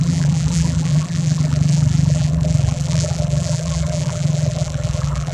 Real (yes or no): no